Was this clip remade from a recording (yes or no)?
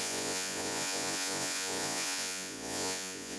yes